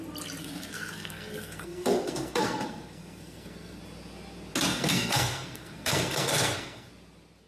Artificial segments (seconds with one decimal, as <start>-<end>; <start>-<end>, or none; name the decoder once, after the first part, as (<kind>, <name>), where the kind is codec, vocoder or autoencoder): 0.4-3.8 (codec, SNAC); 4.7-6.9